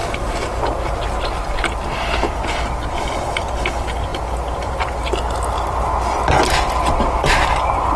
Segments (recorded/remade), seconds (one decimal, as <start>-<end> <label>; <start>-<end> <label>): 0.0-8.0 recorded